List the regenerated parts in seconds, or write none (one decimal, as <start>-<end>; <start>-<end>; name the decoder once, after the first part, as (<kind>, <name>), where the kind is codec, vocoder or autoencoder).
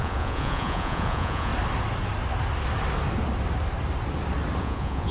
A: 0.0-1.5 (vocoder, Vocos); 4.6-5.1